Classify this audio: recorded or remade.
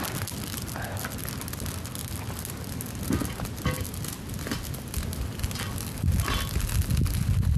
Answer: recorded